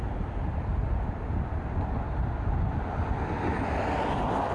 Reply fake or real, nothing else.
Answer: real